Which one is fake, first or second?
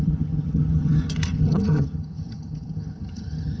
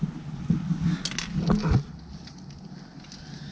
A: first